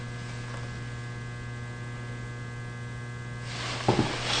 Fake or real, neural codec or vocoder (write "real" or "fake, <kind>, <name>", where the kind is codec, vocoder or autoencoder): real